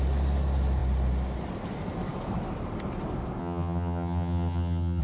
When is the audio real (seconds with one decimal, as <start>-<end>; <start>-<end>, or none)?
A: 0.0-3.4